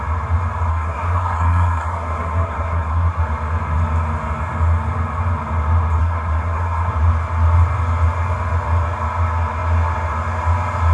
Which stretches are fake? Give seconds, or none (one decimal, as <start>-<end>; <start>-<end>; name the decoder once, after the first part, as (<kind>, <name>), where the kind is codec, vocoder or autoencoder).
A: 0.7-3.2 (codec, SNAC); 6.0-6.9